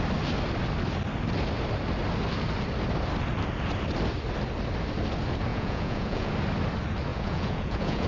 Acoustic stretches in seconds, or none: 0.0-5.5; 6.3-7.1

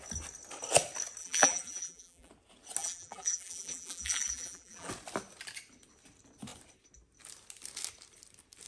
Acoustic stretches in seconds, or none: 0.0-1.2; 2.3-2.8; 4.9-8.7